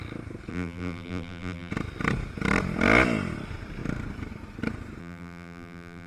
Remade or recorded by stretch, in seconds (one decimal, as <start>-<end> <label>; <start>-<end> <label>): 0.0-0.5 recorded; 0.5-1.7 remade; 1.7-5.0 recorded; 5.0-6.1 remade